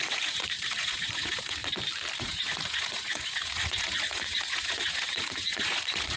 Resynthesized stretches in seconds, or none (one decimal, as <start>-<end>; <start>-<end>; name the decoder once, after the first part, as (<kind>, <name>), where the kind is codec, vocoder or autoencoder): 0.0-1.6 (vocoder, Vocos); 2.2-6.2